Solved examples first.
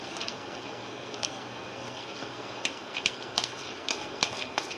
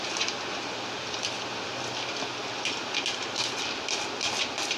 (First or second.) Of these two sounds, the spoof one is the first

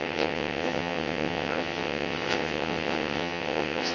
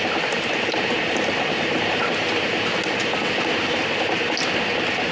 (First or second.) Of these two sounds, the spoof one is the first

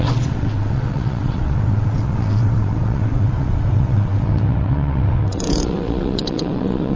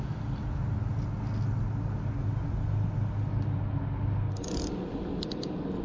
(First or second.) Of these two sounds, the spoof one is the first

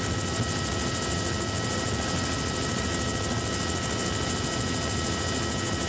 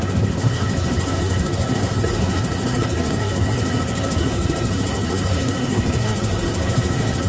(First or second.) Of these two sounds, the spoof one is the second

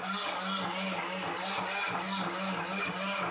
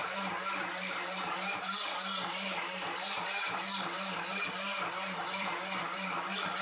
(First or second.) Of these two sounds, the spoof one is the second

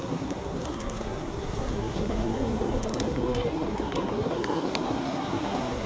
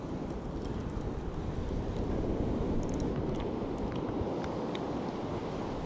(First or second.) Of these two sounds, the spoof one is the first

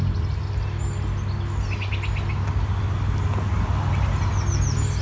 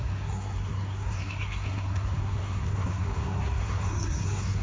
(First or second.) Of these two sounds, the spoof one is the second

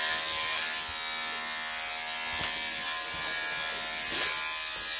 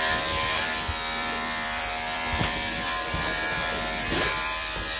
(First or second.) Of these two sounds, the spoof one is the second